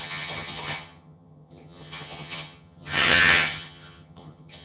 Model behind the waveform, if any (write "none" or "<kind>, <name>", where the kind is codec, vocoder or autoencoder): vocoder, HiFi-GAN